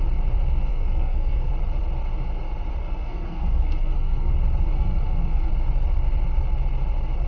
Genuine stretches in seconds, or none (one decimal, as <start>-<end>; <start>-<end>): 0.0-0.7; 1.5-2.8; 4.3-4.7; 5.5-7.3